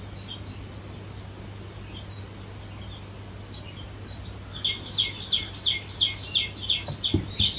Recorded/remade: recorded